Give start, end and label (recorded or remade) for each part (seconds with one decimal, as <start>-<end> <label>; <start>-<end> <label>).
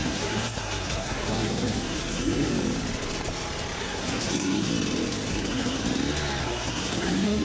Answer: 0.0-2.5 remade; 2.5-3.8 recorded; 3.8-4.7 remade; 4.7-5.3 recorded; 5.3-5.8 remade; 5.8-6.4 recorded; 6.4-7.4 remade